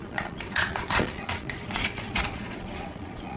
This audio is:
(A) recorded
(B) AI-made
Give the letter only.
B